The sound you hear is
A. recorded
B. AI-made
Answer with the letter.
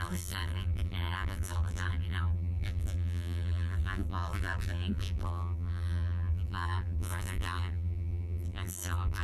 B